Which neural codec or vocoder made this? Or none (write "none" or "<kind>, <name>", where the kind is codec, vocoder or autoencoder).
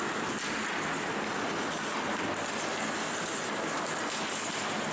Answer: none